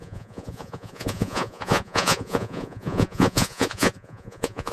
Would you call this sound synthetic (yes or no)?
yes